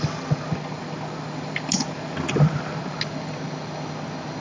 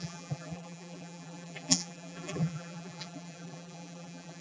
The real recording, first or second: first